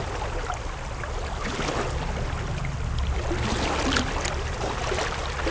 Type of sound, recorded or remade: recorded